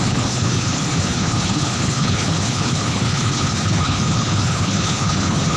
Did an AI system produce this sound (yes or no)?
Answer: yes